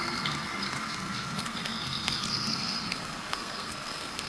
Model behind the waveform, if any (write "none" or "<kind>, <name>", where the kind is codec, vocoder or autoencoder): codec, SNAC